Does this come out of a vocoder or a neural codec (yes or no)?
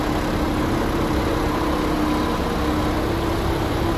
no